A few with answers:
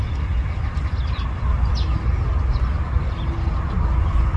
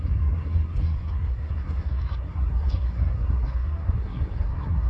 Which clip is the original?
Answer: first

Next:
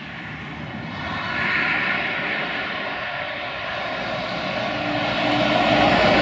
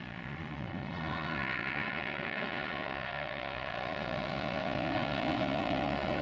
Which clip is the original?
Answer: first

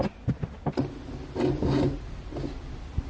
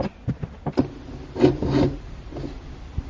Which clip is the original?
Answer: first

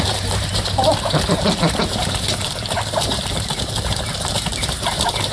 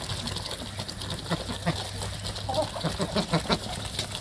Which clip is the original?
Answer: second